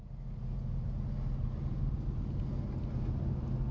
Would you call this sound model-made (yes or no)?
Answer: no